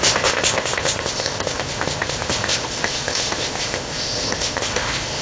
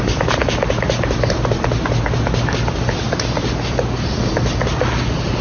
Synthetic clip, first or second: first